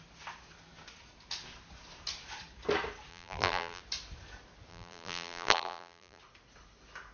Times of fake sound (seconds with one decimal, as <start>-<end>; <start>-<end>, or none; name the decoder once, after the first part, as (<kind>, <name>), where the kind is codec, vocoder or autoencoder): 3.1-3.8 (vocoder, BigVGAN v2); 4.7-6.2